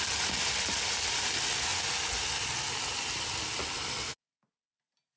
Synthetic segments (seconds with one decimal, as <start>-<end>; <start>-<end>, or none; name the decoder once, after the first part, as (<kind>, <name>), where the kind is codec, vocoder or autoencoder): none